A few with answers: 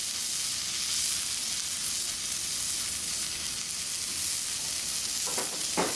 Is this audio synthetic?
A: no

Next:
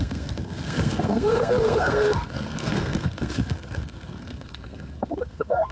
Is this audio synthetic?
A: yes